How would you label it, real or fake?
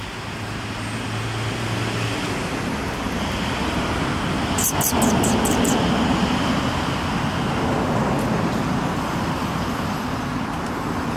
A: real